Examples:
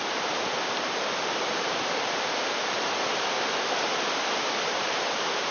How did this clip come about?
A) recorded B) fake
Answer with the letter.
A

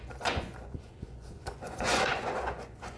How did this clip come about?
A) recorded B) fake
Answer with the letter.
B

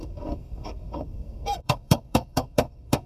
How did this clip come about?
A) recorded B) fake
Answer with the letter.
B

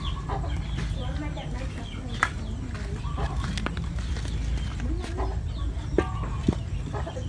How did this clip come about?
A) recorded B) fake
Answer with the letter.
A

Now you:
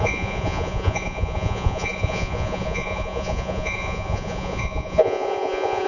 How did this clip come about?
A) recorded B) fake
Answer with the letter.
B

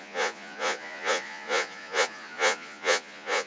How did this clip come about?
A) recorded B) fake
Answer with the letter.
B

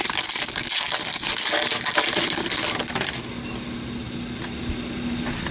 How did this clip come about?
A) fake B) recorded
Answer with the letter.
B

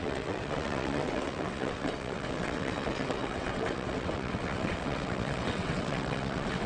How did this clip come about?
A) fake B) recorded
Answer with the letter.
A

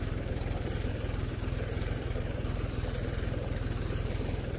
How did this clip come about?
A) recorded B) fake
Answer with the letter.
B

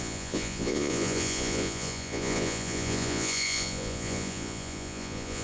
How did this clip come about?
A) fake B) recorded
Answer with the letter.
A